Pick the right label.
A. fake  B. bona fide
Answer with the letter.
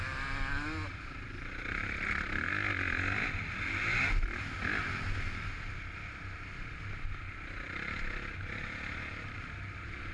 B